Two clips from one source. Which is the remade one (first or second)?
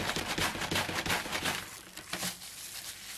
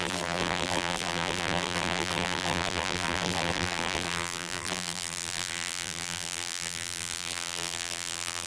second